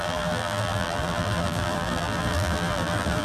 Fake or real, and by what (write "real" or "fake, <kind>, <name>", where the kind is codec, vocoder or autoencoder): fake, vocoder, BigVGAN v2